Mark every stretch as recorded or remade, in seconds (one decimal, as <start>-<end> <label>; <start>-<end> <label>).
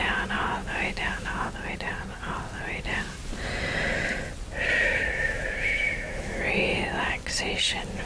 0.0-0.6 recorded; 0.6-1.5 remade; 1.5-4.8 recorded; 4.8-6.4 remade; 6.4-8.1 recorded